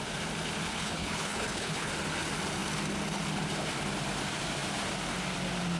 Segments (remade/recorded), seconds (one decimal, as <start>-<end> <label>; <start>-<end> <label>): 0.0-0.7 recorded; 0.7-1.9 remade; 1.9-5.8 recorded